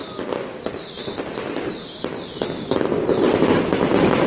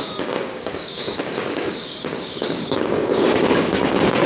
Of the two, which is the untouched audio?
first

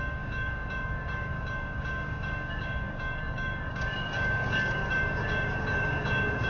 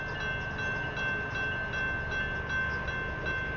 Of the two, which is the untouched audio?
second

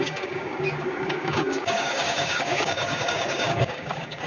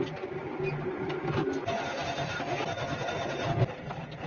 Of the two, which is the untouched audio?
second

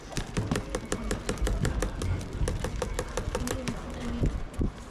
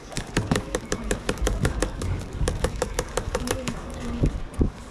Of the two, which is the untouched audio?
first